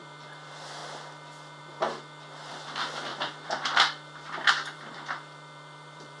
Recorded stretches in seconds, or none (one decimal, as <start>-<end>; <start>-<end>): 0.8-1.6